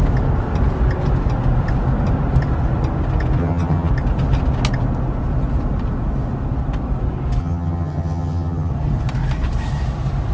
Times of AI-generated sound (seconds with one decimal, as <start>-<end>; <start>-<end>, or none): 3.4-3.9; 7.4-8.7